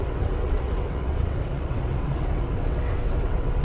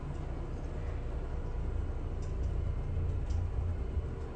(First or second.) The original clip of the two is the second